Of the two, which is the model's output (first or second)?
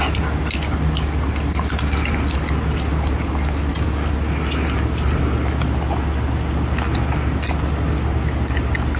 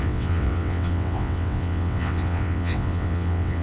second